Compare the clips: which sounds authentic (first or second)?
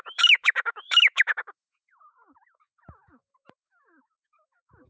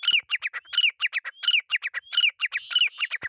second